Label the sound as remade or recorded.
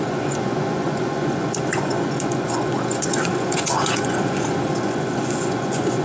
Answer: remade